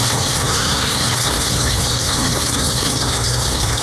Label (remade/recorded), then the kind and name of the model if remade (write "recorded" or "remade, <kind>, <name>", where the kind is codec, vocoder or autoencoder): remade, codec, SNAC